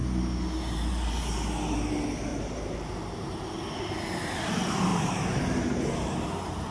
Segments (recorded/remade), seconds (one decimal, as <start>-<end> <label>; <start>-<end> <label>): 0.0-2.3 recorded; 2.3-2.9 remade; 2.9-4.9 recorded; 4.9-5.8 remade; 5.8-6.7 recorded